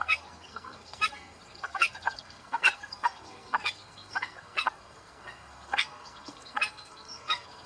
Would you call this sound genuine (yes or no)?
no